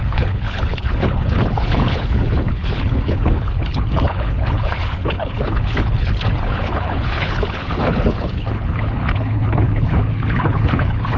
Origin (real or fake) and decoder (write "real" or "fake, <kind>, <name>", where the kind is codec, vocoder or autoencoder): fake, codec, HILCodec